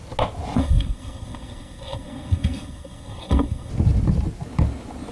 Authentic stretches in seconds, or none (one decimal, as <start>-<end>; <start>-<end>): 0.0-0.6; 3.7-5.1